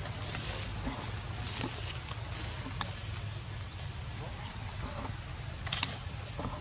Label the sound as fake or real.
real